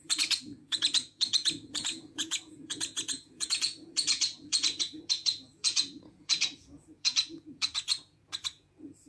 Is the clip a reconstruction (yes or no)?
yes